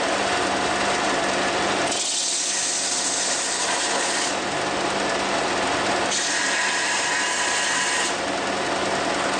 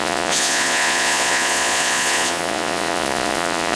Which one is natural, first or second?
first